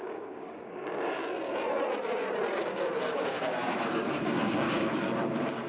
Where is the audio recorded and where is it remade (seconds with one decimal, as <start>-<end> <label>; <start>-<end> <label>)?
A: 0.0-1.2 remade; 1.2-2.6 recorded; 2.6-5.7 remade

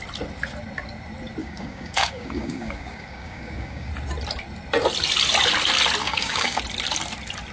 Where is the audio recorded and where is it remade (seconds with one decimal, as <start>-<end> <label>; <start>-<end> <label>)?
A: 0.0-1.4 recorded; 1.4-3.9 remade; 3.9-6.0 recorded; 6.0-6.6 remade; 6.6-7.5 recorded

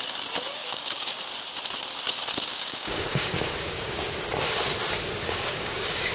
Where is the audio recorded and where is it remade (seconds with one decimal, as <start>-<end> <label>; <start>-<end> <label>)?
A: 0.0-0.6 recorded; 0.6-1.2 remade; 1.2-2.5 recorded; 2.5-4.0 remade; 4.0-5.2 recorded; 5.2-6.1 remade

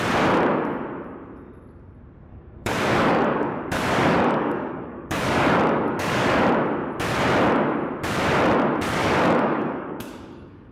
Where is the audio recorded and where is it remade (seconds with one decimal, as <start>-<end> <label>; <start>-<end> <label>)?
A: 0.0-2.3 recorded; 2.3-6.5 remade; 6.5-9.0 recorded; 9.0-10.7 remade

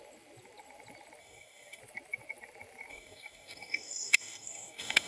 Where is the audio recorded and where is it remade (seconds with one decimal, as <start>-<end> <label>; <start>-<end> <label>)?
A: 0.0-1.2 recorded; 1.2-1.8 remade; 1.8-2.9 recorded; 2.9-5.1 remade

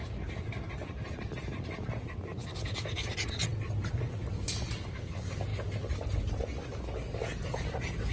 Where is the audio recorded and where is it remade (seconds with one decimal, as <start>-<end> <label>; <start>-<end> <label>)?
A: 0.0-8.1 recorded

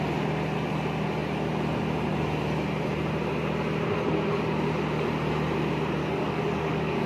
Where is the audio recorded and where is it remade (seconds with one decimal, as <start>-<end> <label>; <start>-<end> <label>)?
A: 0.0-6.0 recorded; 6.0-7.1 remade